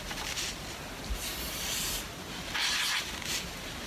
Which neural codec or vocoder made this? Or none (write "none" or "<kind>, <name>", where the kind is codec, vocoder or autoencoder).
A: none